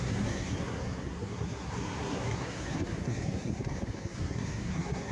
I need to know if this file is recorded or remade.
remade